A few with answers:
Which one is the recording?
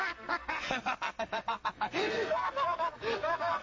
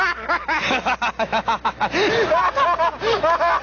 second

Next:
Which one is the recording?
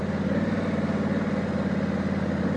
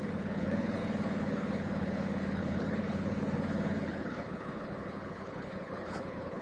first